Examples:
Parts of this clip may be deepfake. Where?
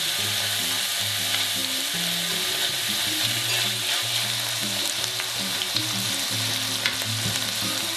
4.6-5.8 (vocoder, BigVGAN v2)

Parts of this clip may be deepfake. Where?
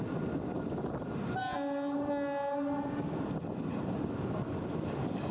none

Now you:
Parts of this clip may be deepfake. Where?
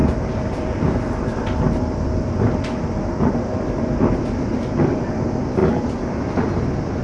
0.0-5.6 (vocoder, BigVGAN v2)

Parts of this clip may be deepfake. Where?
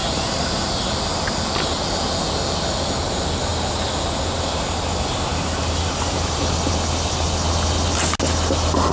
0.0-0.8 (vocoder, BigVGAN v2); 3.5-4.4; 5.3-6.7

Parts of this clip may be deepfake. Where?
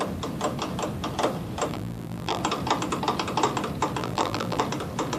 1.7-2.4 (vocoder, BigVGAN v2); 4.0-4.6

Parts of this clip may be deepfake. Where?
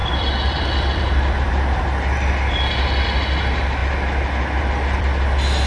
0.0-1.8 (vocoder, BigVGAN v2)